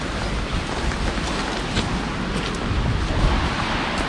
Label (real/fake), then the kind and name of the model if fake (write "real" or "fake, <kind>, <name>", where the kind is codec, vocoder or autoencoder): real